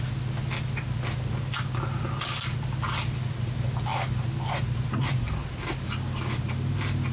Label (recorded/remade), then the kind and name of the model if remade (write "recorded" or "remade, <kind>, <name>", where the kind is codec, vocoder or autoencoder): recorded